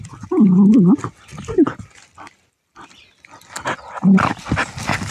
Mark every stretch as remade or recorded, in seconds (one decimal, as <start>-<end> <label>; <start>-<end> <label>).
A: 0.0-5.1 recorded

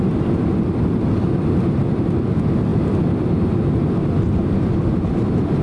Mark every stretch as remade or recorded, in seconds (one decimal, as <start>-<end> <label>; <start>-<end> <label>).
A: 0.0-5.6 recorded

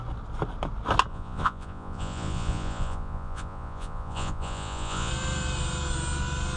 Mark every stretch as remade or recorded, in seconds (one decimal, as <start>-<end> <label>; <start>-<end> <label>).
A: 0.0-1.1 recorded; 1.1-5.1 remade; 5.1-6.6 recorded

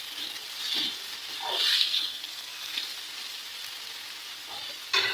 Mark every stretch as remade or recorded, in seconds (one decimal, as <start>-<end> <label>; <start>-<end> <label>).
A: 0.0-1.7 recorded; 1.7-2.8 remade; 2.8-5.1 recorded

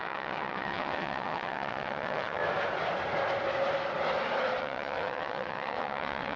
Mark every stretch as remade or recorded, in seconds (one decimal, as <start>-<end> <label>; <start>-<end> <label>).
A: 0.0-2.4 remade; 2.4-4.6 recorded; 4.6-6.4 remade

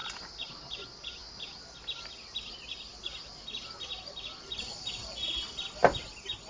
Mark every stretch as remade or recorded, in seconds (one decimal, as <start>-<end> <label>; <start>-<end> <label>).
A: 0.0-6.5 recorded

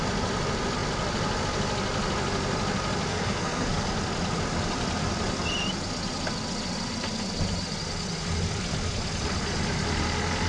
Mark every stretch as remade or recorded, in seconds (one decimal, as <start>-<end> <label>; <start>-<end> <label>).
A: 0.0-3.1 recorded; 3.1-3.9 remade; 3.9-10.5 recorded

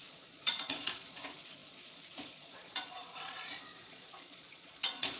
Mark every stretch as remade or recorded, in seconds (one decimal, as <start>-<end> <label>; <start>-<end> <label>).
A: 0.0-5.2 remade